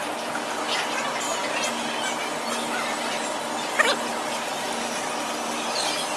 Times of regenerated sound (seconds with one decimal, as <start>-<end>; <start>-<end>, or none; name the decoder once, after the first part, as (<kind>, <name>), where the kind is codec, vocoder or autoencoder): none